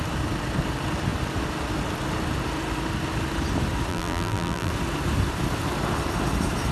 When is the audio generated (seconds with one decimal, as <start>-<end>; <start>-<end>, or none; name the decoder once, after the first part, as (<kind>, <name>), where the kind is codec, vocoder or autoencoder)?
3.9-4.7 (vocoder, BigVGAN v2)